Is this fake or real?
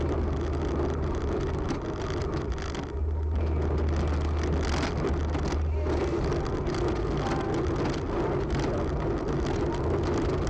real